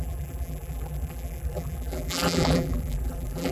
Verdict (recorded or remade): remade